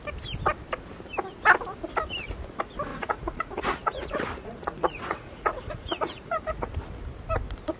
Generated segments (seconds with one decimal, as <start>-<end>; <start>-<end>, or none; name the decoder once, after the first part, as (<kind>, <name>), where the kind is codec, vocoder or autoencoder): 2.9-6.7 (vocoder, Vocos)